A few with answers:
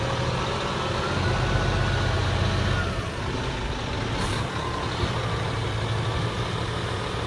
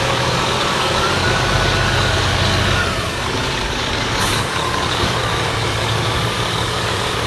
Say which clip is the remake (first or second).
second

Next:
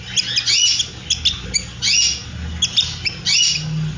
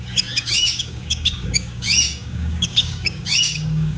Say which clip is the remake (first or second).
second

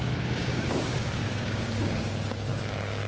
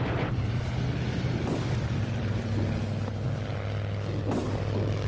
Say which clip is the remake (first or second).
first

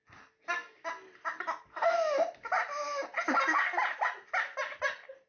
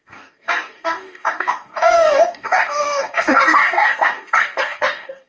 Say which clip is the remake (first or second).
second